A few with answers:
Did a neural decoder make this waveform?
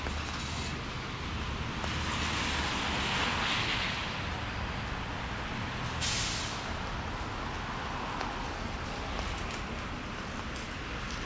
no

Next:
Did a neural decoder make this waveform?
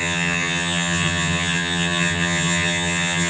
yes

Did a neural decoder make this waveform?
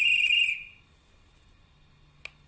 no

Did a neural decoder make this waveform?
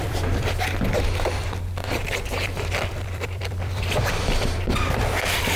yes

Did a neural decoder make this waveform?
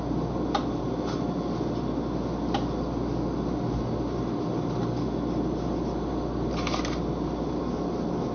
no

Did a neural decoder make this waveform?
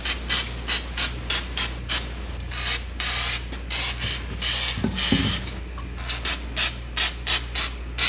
no